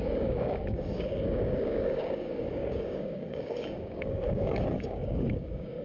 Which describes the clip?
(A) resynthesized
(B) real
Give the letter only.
A